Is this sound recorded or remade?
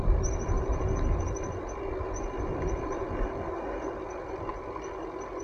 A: recorded